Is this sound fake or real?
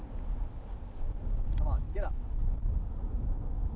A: real